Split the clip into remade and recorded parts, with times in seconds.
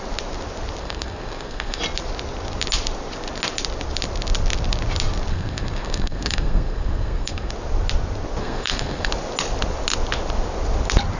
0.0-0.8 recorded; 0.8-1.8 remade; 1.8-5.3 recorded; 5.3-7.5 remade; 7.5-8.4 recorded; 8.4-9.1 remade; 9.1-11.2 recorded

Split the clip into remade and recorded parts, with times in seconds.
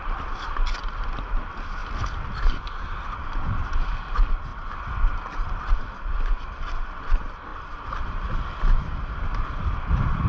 0.0-10.3 recorded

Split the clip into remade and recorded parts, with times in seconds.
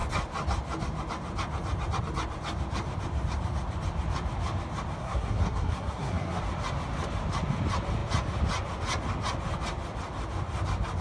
0.0-5.0 recorded; 5.0-6.4 remade; 6.4-11.0 recorded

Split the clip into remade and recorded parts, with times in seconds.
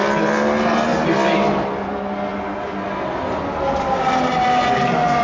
0.0-5.2 recorded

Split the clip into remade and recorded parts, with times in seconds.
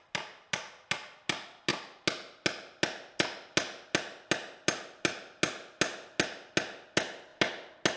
0.0-8.0 recorded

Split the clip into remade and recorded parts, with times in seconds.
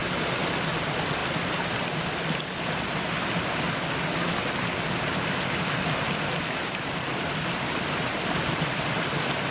0.0-9.5 recorded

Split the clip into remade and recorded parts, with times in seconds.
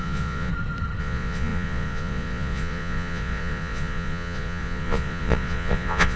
0.0-0.5 remade; 0.5-1.0 recorded; 1.0-6.2 remade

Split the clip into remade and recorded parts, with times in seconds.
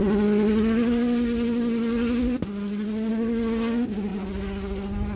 0.0-5.2 recorded